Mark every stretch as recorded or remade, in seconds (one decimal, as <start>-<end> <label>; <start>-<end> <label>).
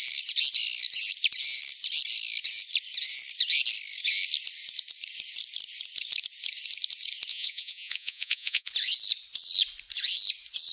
0.0-7.3 recorded; 7.3-8.7 remade; 8.7-10.7 recorded